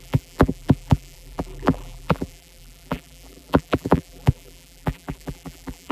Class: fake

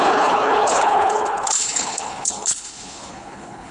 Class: fake